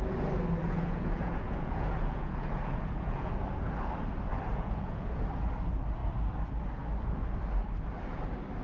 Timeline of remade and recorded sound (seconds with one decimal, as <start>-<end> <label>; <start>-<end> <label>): 0.0-0.6 recorded; 0.6-3.3 remade; 3.3-4.5 recorded; 4.5-5.2 remade; 5.2-8.6 recorded